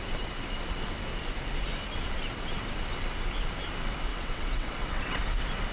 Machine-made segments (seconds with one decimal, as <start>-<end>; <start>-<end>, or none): 4.1-5.2